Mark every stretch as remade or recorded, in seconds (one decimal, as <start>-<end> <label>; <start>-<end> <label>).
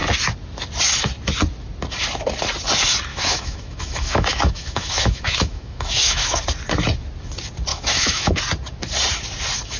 0.0-3.1 recorded; 3.1-6.4 remade; 6.4-7.7 recorded; 7.7-8.4 remade; 8.4-9.8 recorded